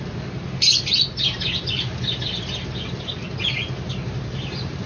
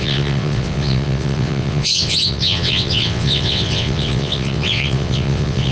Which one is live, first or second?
first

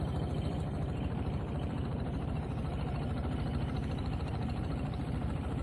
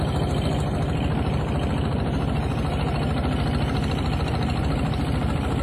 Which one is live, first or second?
second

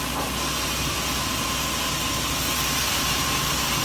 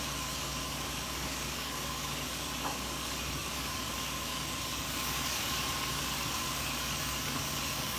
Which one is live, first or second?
first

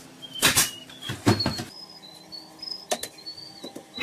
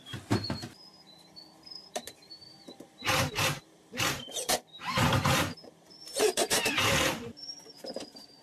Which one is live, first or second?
first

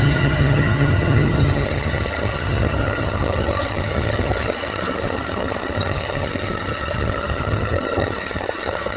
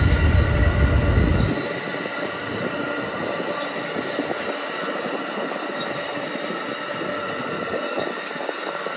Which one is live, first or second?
second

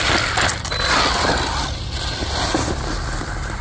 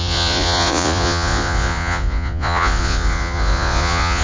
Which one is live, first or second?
first